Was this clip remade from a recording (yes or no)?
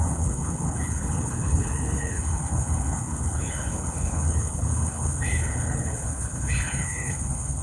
yes